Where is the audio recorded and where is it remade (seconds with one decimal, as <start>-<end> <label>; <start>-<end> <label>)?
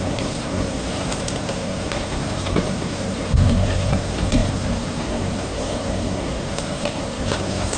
0.0-7.8 remade